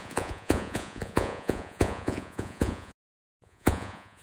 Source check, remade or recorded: remade